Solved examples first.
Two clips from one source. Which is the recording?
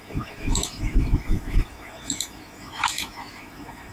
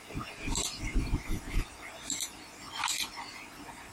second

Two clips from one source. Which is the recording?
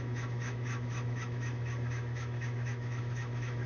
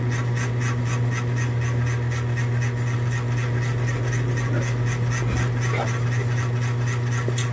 second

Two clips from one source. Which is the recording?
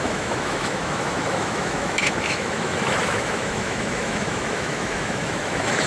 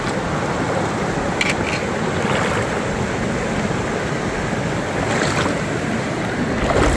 second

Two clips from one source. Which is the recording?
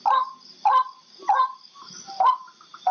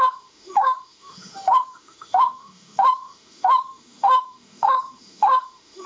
first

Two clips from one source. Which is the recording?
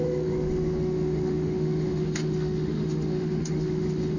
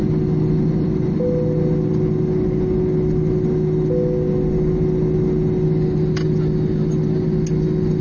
second